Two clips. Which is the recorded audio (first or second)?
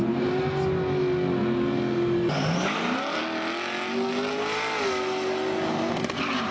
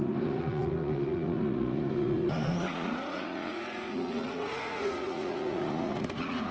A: first